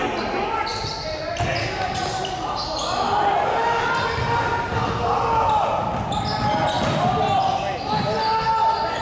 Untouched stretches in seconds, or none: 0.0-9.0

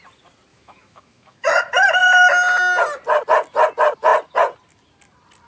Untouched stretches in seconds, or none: 0.0-0.5; 1.6-5.5

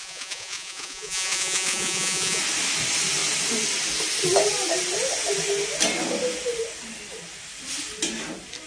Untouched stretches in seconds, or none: 2.4-8.7

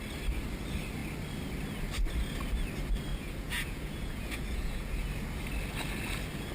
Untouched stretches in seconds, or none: 0.0-3.1; 5.1-6.5

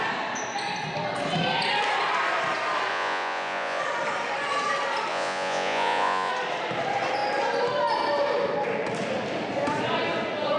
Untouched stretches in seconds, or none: 0.0-2.9; 3.8-5.1; 6.3-10.6